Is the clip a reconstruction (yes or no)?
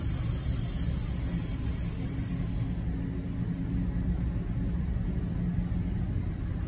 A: no